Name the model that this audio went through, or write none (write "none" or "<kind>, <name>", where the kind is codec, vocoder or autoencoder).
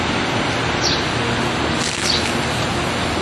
none